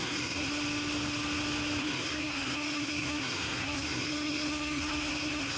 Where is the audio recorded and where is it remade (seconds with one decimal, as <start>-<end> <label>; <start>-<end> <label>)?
0.0-0.5 remade; 0.5-1.8 recorded; 1.8-5.6 remade